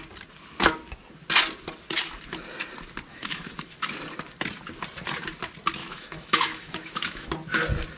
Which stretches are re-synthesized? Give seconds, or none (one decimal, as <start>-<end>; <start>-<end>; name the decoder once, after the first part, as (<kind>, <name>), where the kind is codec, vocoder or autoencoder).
3.1-3.9 (autoencoder, DAC-VAE); 5.8-7.3